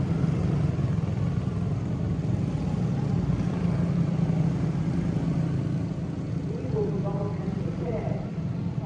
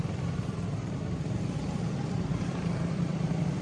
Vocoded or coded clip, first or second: second